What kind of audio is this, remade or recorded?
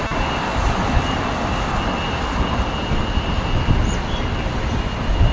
recorded